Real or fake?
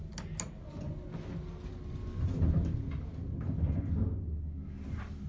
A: real